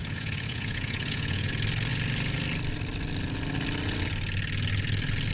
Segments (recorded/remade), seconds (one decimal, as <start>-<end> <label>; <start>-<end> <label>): 0.0-1.5 remade; 1.5-5.3 recorded